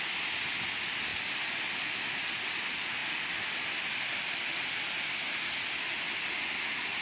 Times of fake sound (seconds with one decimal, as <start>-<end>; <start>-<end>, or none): none